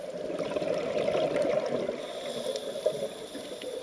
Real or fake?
real